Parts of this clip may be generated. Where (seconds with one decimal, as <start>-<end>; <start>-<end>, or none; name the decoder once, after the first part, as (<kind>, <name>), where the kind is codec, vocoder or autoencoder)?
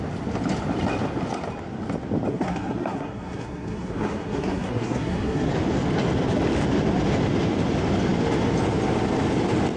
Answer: 2.3-5.5 (codec, SNAC)